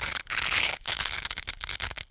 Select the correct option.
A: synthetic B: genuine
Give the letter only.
A